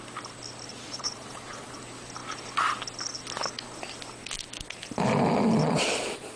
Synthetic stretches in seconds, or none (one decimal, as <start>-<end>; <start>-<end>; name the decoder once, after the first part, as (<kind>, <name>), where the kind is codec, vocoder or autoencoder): 0.7-1.8 (vocoder, Vocos); 5.6-6.4

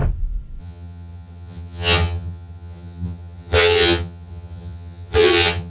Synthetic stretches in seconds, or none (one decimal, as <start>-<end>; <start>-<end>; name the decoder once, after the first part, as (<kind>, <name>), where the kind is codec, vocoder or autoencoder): 0.6-5.7 (vocoder, HiFi-GAN)

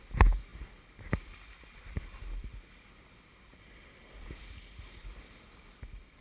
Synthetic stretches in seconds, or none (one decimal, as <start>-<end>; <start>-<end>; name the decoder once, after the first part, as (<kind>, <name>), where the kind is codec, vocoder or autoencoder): none

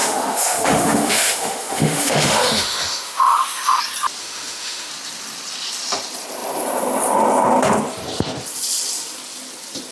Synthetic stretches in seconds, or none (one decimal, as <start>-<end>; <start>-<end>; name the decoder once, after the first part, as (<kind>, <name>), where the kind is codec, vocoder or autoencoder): 0.0-3.8 (autoencoder, DAC-VAE); 4.2-4.9

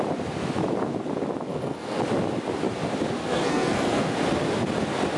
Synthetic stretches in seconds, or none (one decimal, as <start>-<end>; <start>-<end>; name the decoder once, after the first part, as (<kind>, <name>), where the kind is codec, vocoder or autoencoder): 1.5-2.0 (codec, SNAC); 3.2-4.0

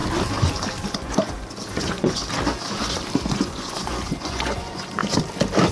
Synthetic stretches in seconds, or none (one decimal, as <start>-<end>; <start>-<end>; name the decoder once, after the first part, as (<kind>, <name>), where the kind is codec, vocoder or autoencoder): 0.9-2.2 (vocoder, Vocos); 3.3-5.0

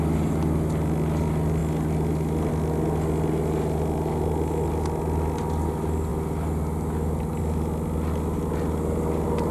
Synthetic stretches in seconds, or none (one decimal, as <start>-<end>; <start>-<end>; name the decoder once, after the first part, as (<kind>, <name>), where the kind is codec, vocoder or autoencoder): none

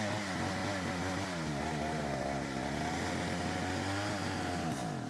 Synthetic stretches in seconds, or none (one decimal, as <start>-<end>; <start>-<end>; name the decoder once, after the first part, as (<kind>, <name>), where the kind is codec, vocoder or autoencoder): none